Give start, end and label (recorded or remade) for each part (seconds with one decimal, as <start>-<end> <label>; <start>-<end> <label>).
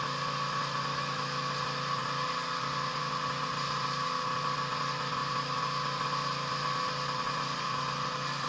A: 0.0-0.9 recorded; 0.9-1.5 remade; 1.5-8.5 recorded